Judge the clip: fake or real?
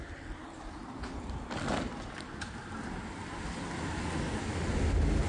real